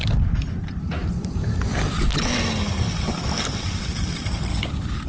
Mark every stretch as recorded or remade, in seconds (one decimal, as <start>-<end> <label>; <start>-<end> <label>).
0.0-4.5 recorded; 4.5-5.1 remade